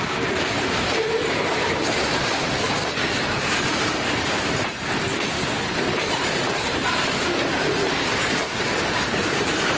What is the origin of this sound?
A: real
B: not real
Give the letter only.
B